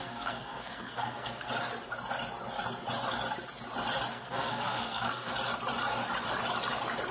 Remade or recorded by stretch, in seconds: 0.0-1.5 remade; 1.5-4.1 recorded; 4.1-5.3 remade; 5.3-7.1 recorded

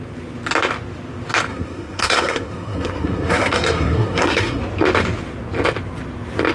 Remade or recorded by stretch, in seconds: 0.0-1.5 recorded; 1.5-4.6 remade; 4.6-6.5 recorded

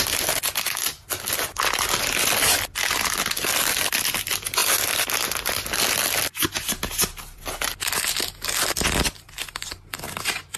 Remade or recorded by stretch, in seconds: 0.0-10.6 recorded

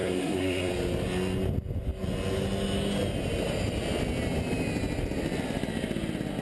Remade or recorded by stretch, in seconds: 0.0-0.7 remade; 0.7-6.4 recorded

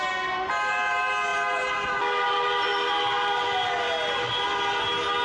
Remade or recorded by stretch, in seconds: 0.0-5.2 recorded

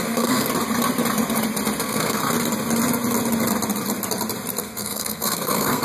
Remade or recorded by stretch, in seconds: 0.0-0.5 remade; 0.5-1.8 recorded; 1.8-2.2 remade; 2.2-4.6 recorded; 4.6-5.8 remade